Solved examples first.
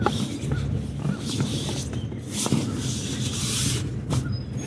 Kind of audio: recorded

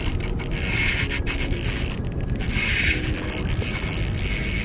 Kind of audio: recorded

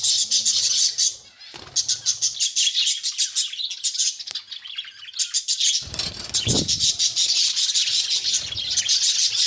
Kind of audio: recorded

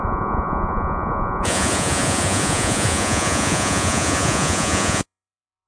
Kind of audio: remade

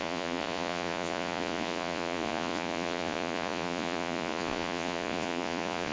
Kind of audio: remade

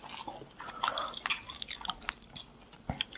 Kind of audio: recorded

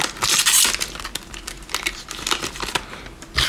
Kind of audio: recorded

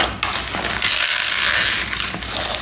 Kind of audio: recorded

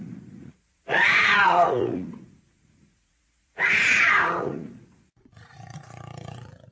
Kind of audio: remade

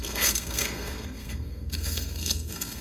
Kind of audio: remade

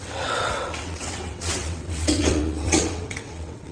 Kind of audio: remade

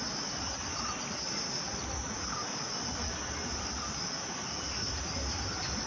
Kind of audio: recorded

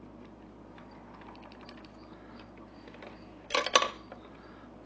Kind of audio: recorded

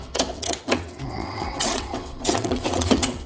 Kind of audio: remade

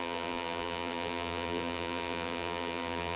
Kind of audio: remade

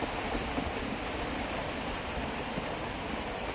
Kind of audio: recorded